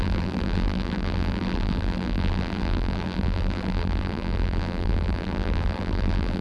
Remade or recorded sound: remade